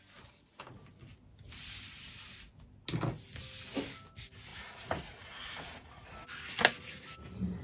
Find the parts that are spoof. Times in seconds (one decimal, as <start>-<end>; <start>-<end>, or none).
4.5-6.1